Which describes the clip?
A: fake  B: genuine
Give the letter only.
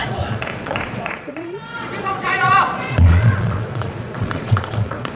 A